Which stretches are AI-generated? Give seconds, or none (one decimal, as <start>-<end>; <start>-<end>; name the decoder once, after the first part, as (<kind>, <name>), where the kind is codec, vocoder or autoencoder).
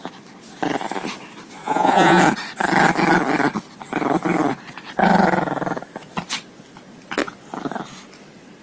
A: 1.6-2.2 (vocoder, Vocos)